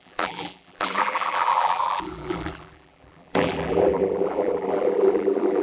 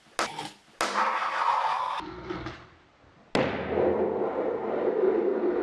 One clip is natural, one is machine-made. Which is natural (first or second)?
second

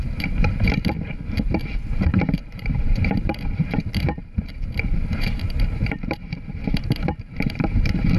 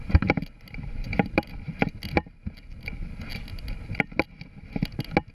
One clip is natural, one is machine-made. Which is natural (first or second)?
second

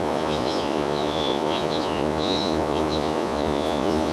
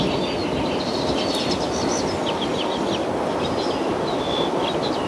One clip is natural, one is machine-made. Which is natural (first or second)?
second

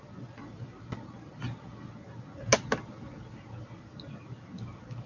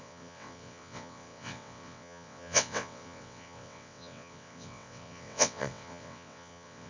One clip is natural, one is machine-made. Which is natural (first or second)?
first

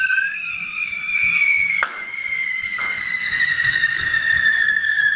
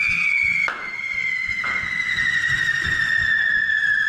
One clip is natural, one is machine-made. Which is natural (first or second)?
second